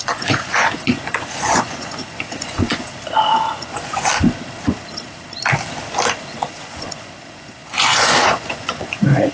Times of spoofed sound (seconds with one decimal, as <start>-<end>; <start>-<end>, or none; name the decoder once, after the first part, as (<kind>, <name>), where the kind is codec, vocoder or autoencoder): 0.0-2.9 (vocoder, Vocos); 3.5-4.1; 6.2-9.3

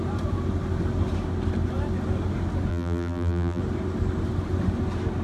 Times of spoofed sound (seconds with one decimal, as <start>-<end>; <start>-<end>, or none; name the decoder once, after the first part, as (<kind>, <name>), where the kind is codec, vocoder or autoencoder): 2.7-3.6 (vocoder, BigVGAN v2)

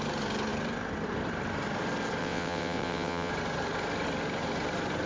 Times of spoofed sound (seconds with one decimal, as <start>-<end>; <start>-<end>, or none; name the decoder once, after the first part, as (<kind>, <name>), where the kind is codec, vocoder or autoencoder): 2.2-3.3 (vocoder, WaveNeXt)

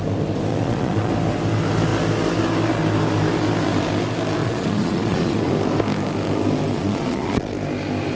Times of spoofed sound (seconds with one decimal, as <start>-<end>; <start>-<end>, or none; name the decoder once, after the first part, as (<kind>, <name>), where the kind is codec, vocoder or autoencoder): 0.5-1.1 (vocoder, Vocos); 4.4-5.5; 6.7-7.5

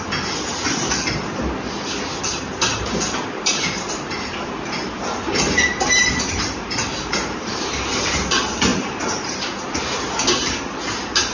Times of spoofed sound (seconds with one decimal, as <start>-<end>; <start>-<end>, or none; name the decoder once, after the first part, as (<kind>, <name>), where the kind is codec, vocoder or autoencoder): 0.5-1.3 (vocoder, BigVGAN v2); 2.7-7.5; 8.7-10.6

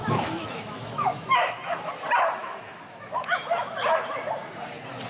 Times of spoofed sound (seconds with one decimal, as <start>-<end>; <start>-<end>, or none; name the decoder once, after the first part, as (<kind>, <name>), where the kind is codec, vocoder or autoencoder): 0.0-1.9 (autoencoder, DAC-VAE); 2.4-3.7